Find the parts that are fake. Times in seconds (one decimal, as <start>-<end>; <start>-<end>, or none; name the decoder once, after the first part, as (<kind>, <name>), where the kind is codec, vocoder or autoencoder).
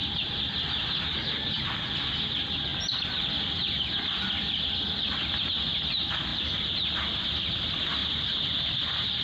0.0-1.5 (vocoder, BigVGAN v2); 8.0-8.7